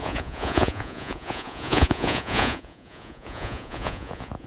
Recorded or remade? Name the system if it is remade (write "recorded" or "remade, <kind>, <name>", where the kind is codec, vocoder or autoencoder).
remade, vocoder, Vocos